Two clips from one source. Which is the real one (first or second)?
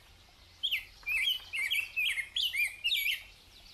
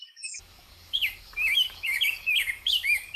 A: first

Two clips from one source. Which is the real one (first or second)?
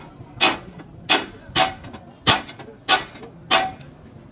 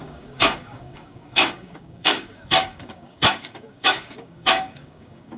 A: first